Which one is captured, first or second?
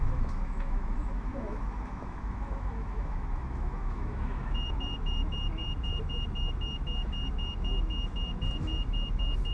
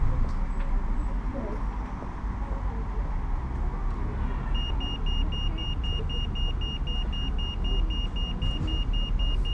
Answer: second